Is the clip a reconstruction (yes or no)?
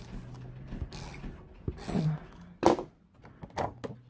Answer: no